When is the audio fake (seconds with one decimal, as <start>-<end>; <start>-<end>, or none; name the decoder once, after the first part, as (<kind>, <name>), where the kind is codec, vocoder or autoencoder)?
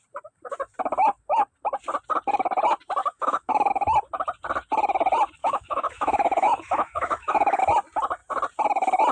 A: 3.0-3.7 (autoencoder, DAC-VAE); 5.4-7.6